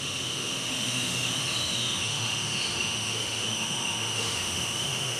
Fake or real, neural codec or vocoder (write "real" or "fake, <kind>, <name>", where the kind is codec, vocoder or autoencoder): fake, autoencoder, DAC-VAE